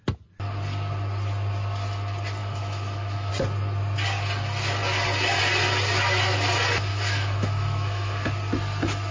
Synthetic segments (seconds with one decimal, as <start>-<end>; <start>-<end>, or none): 2.4-3.3; 6.9-8.3